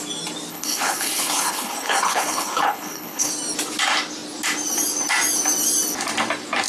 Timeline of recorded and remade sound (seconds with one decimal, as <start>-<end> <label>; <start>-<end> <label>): 0.0-0.5 recorded; 0.5-3.3 remade; 3.3-6.7 recorded

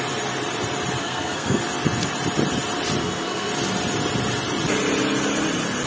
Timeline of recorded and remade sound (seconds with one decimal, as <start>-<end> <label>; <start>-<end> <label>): 0.0-1.0 recorded; 1.0-1.6 remade; 1.6-3.0 recorded; 3.0-3.5 remade; 3.5-5.9 recorded

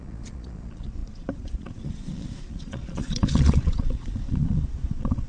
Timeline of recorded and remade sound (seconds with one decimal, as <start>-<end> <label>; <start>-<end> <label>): 0.0-5.3 remade

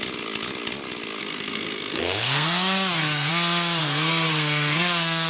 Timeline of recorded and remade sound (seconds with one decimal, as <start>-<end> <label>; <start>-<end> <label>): 0.0-1.2 recorded; 1.2-3.3 remade; 3.3-3.8 recorded; 3.8-5.3 remade